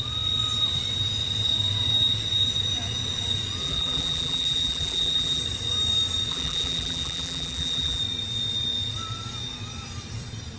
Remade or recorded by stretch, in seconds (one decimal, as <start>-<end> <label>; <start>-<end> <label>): 0.0-3.6 recorded; 3.6-5.4 remade; 5.4-6.3 recorded; 6.3-8.0 remade; 8.0-10.6 recorded